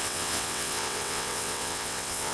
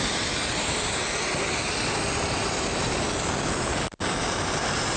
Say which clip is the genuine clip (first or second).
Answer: second